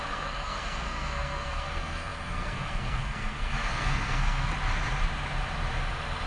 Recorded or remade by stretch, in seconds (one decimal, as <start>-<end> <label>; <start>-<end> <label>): 0.0-4.5 remade; 4.5-6.3 recorded